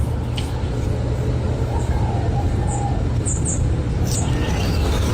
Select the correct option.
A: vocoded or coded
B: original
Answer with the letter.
B